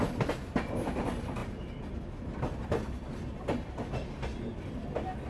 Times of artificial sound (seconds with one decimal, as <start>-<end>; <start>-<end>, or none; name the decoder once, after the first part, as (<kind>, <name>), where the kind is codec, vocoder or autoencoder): none